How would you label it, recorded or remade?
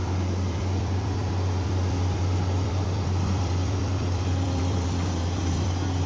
remade